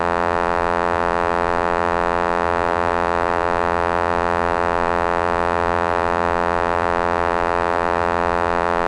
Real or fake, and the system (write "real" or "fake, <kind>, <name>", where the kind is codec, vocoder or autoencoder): fake, vocoder, BigVGAN v2